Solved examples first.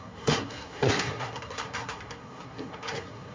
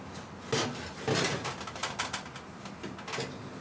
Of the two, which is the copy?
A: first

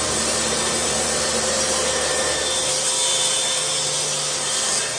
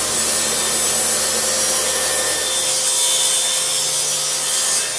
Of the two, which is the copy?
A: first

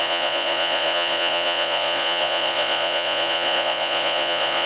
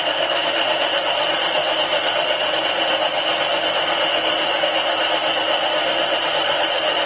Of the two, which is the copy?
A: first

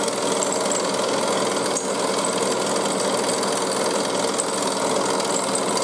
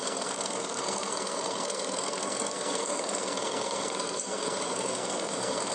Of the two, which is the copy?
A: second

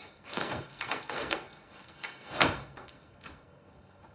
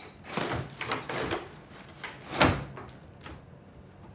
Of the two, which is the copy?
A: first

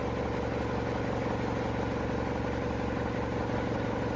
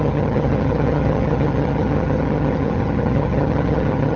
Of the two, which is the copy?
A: second